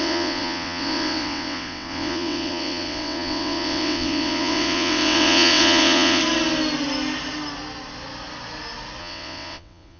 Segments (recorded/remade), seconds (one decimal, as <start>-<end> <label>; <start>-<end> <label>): 0.0-6.2 remade; 6.2-9.0 recorded; 9.0-10.0 remade